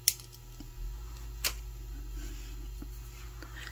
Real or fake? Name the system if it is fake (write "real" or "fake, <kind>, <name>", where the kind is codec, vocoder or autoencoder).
real